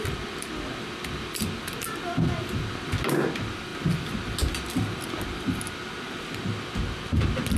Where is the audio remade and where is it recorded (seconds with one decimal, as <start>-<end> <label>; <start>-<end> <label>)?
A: 0.0-7.6 recorded